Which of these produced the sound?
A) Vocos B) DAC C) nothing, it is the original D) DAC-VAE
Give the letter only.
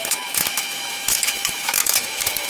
D